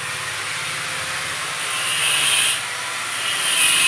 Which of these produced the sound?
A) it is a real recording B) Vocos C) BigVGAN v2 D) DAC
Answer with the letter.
A